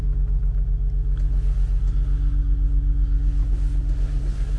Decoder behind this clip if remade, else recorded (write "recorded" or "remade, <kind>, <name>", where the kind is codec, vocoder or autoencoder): recorded